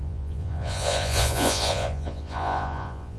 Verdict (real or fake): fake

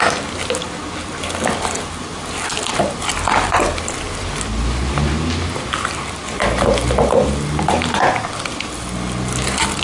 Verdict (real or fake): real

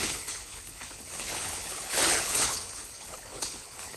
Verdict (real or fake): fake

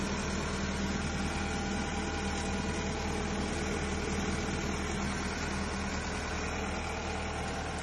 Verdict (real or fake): real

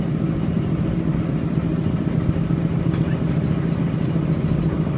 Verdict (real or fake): real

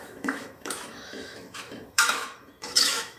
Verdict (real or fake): fake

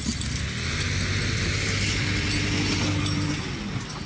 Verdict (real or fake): real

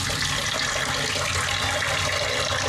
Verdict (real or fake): real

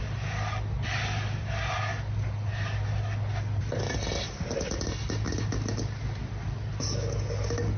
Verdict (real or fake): real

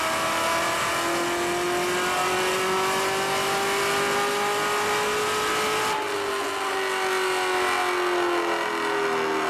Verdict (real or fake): real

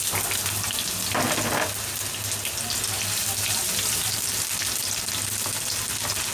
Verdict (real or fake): real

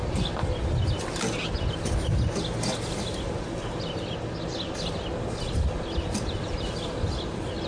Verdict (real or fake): real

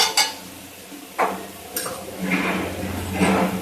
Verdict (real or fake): real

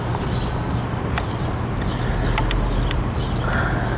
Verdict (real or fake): real